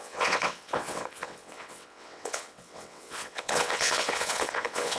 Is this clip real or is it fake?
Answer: fake